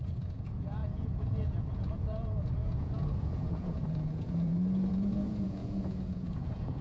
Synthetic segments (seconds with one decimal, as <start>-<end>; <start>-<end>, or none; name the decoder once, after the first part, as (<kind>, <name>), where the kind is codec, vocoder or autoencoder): 0.0-6.8 (vocoder, Vocos)